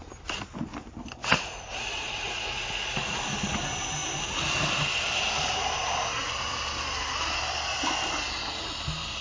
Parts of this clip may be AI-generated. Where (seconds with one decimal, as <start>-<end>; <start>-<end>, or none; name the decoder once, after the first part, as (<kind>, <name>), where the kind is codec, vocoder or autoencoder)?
1.2-3.2 (vocoder, Vocos)